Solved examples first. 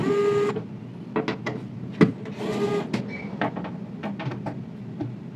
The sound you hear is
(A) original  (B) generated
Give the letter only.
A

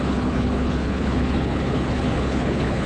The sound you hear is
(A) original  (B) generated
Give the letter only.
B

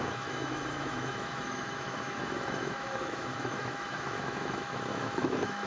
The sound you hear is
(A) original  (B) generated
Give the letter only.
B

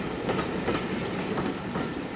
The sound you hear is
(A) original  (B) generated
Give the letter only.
A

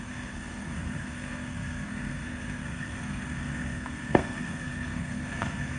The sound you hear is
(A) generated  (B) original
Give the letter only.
A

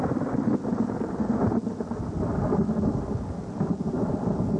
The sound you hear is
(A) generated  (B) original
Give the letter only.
B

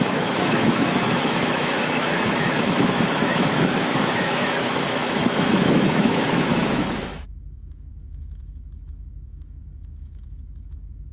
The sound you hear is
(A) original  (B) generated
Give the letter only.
B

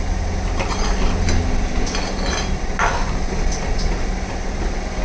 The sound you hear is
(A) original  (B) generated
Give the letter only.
A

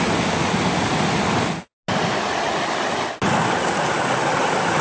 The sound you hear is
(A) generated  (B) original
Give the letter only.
B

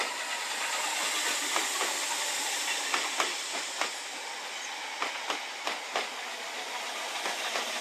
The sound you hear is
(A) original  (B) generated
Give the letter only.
A